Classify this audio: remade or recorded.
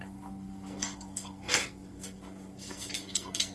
remade